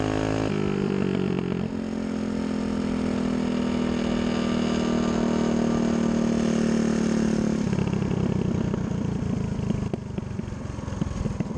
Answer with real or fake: real